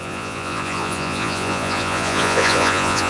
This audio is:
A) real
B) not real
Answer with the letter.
B